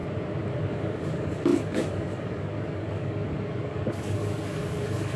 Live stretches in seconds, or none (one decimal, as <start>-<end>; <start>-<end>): 0.0-0.6